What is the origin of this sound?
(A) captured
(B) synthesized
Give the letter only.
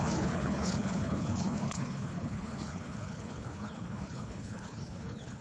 B